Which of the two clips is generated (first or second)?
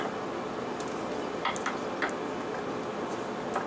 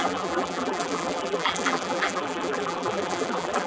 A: second